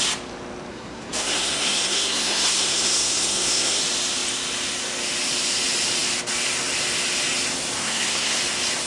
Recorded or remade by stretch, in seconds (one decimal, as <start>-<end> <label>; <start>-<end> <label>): 0.0-0.7 recorded; 0.7-3.8 remade; 3.8-7.8 recorded; 7.8-8.4 remade; 8.4-8.9 recorded